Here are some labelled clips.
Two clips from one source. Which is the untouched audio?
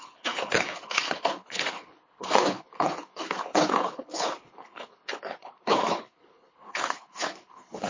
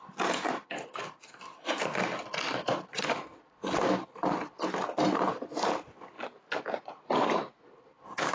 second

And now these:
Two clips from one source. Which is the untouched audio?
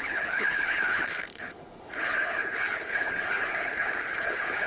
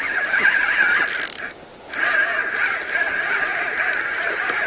second